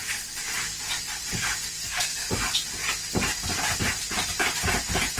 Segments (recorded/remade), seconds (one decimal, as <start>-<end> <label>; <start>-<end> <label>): 0.0-1.8 recorded; 1.8-2.3 remade; 2.3-5.2 recorded